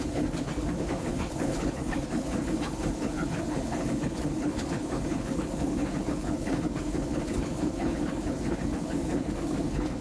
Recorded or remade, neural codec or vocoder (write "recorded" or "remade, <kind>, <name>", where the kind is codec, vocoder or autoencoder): remade, codec, HILCodec